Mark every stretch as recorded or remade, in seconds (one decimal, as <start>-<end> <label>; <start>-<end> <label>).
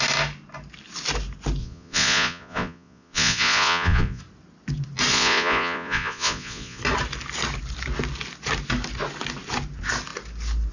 0.0-1.6 recorded; 1.6-4.2 remade; 4.2-5.1 recorded; 5.1-6.8 remade; 6.8-10.7 recorded